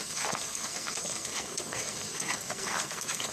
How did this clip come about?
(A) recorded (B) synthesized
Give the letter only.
B